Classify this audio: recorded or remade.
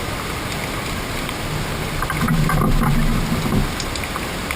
recorded